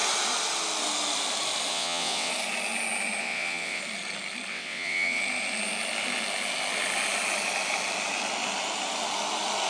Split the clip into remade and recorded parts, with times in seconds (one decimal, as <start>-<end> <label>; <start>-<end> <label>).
0.0-1.7 recorded; 1.7-2.3 remade; 2.3-3.2 recorded; 3.2-3.8 remade; 3.8-4.5 recorded; 4.5-5.2 remade; 5.2-9.7 recorded